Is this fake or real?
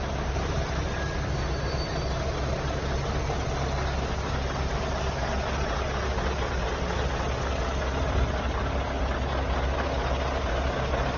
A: real